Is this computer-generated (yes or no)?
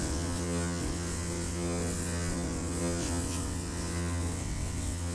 yes